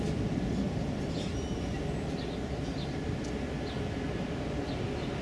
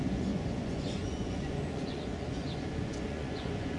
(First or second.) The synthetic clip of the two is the second